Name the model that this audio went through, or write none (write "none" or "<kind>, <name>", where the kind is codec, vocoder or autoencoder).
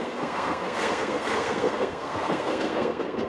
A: codec, SNAC